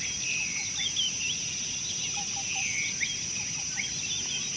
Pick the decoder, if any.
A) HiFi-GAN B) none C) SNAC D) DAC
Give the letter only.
B